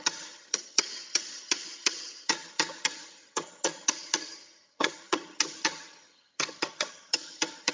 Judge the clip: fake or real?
fake